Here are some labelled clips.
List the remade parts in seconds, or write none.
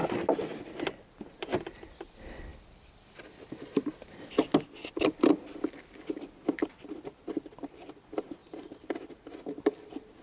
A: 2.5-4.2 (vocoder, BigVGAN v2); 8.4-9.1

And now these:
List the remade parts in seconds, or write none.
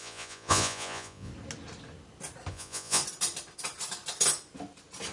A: 0.0-1.3 (vocoder, Vocos); 2.5-3.0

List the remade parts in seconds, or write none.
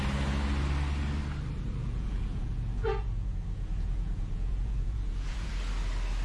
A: 1.8-5.5 (vocoder, Vocos)